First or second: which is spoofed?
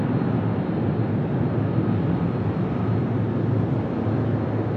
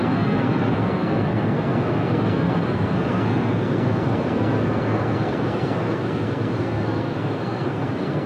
second